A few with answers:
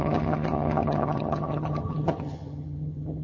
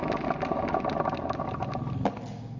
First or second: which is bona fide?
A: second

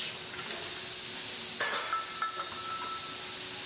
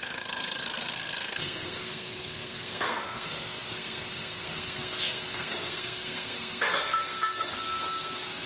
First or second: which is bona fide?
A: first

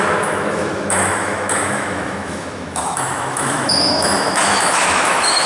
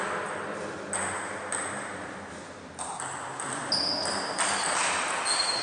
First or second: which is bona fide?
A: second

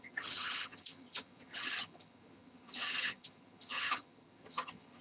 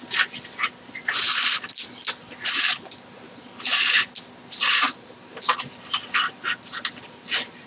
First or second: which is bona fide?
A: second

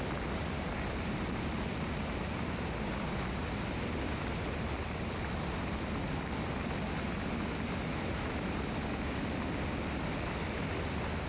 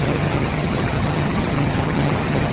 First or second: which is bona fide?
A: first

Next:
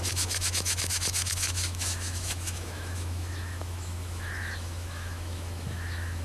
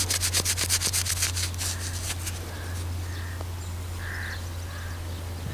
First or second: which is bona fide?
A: second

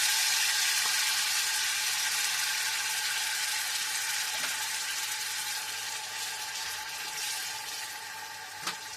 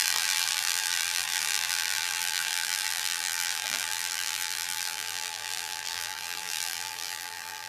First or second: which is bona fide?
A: first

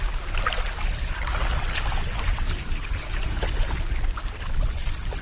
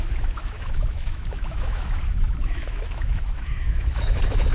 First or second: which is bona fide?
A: first